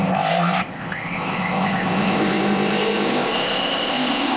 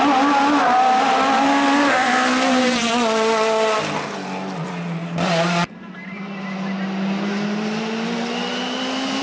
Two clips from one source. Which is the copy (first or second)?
first